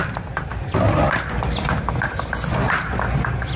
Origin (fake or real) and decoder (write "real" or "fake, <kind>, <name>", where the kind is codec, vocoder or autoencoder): real